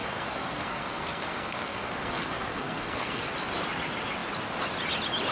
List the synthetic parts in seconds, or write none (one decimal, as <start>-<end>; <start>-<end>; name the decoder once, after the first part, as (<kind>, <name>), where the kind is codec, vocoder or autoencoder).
0.0-3.2 (codec, SNAC)